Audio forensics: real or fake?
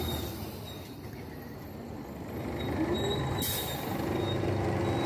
real